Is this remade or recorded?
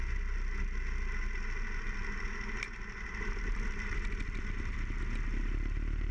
recorded